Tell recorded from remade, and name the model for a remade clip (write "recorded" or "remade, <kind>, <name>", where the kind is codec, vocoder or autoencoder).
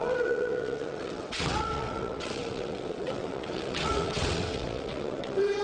remade, vocoder, WaveNeXt